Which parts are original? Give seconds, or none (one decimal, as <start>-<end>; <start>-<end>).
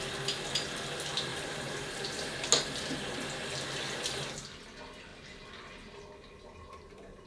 0.0-1.3; 2.2-7.3